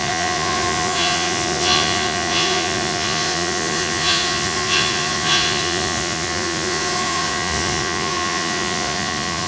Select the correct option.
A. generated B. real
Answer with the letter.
A